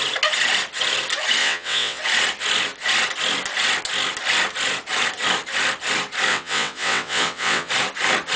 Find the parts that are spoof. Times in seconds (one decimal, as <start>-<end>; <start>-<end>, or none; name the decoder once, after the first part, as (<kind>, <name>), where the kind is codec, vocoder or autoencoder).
1.4-2.0 (vocoder, WaveNeXt); 6.3-7.7